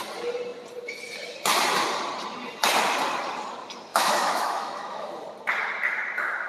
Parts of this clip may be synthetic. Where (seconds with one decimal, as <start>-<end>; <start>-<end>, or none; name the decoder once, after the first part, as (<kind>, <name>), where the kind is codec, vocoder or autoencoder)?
3.9-5.1 (autoencoder, DAC-VAE)